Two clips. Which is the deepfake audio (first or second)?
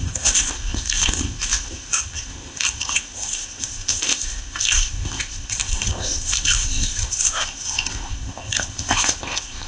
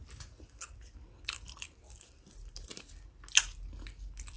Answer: first